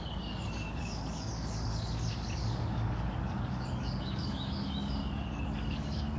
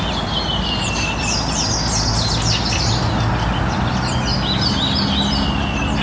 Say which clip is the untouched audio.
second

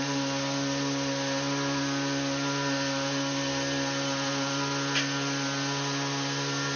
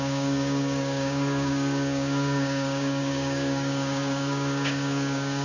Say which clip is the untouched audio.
first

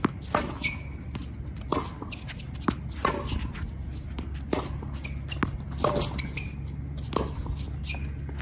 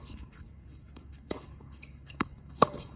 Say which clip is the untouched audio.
first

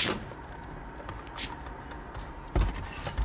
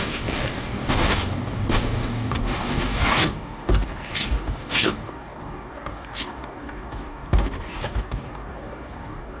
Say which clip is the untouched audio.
first